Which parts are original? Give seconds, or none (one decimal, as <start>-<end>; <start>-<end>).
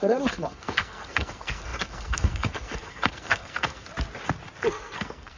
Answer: 3.9-4.7